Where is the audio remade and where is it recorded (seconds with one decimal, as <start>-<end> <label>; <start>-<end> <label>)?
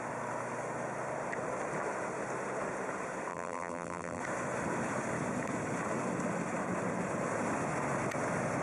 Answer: 0.0-3.3 recorded; 3.3-4.2 remade; 4.2-8.6 recorded